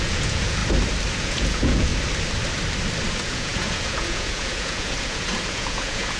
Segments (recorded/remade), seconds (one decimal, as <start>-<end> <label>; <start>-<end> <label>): 0.0-0.6 remade; 0.6-1.2 recorded; 1.2-1.9 remade; 1.9-3.1 recorded; 3.1-6.2 remade